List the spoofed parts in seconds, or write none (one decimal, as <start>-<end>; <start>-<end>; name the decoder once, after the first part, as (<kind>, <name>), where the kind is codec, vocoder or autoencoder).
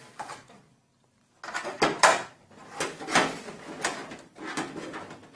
none